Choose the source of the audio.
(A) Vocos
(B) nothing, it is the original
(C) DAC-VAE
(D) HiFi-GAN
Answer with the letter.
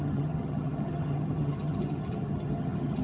D